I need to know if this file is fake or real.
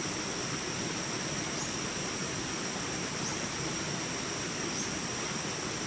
real